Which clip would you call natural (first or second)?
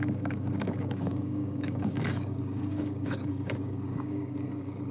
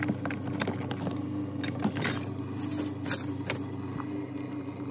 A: second